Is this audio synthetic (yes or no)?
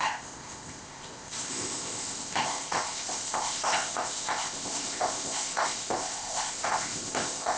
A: yes